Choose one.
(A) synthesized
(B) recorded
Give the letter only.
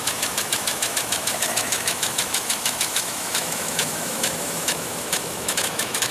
A